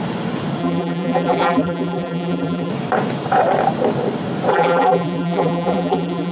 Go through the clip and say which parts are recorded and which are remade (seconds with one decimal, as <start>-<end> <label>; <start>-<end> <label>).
0.0-0.6 recorded; 0.6-2.7 remade; 2.7-4.5 recorded; 4.5-6.3 remade